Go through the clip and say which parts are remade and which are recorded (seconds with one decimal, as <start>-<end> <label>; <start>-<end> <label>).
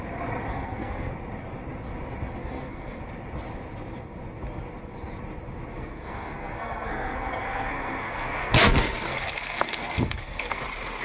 0.0-0.5 recorded; 0.5-1.1 remade; 1.1-2.4 recorded; 2.4-3.0 remade; 3.0-5.7 recorded; 5.7-10.6 remade; 10.6-11.0 recorded